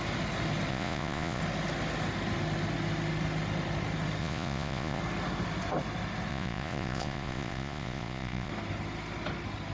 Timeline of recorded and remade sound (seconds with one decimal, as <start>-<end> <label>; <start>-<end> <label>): 0.0-0.7 recorded; 0.7-1.4 remade; 1.4-4.2 recorded; 4.2-5.0 remade; 5.0-6.3 recorded; 6.3-8.5 remade; 8.5-9.7 recorded